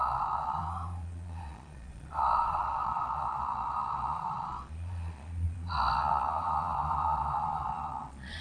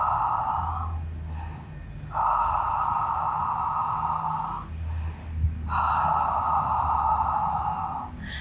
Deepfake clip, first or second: first